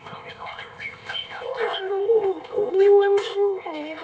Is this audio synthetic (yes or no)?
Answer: yes